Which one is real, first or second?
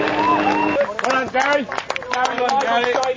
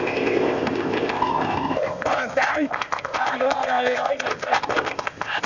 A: first